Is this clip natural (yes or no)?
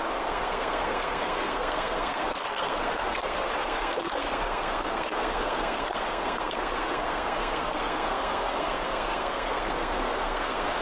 no